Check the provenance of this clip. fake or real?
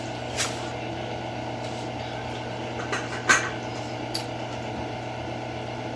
real